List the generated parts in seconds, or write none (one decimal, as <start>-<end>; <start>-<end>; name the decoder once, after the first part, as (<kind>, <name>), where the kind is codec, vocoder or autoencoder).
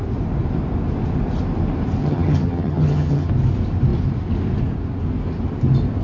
2.0-3.3 (vocoder, HiFi-GAN)